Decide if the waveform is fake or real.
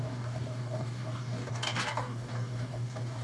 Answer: fake